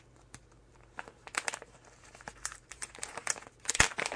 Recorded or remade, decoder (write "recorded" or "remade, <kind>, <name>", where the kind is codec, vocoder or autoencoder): remade, vocoder, BigVGAN v2